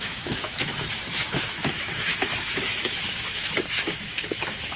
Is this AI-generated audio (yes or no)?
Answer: yes